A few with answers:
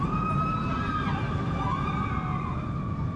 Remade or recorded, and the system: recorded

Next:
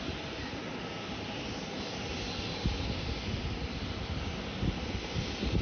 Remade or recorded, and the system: recorded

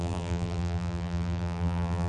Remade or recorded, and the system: remade, vocoder, BigVGAN v2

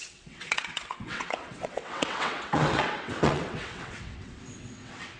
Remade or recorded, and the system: remade, vocoder, WaveNeXt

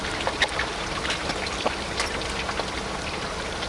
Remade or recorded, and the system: recorded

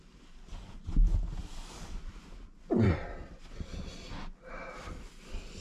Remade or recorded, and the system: recorded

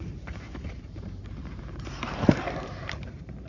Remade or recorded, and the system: remade, vocoder, BigVGAN v2